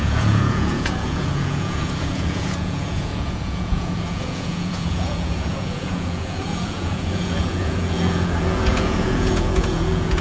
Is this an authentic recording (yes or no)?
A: no